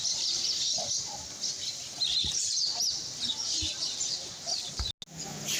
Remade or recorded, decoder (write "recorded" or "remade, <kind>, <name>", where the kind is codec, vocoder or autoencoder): recorded